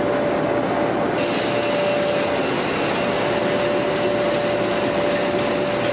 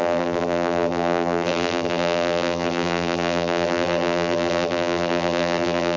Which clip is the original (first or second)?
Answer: first